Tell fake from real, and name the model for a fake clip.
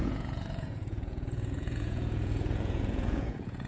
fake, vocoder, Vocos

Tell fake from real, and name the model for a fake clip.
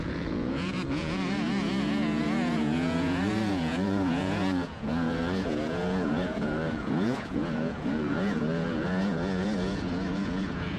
fake, vocoder, Vocos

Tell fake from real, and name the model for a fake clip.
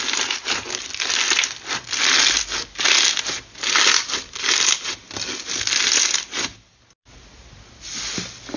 real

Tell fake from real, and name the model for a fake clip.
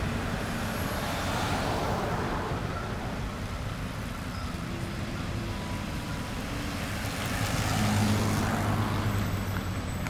real